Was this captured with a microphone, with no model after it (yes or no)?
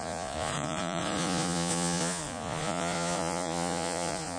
no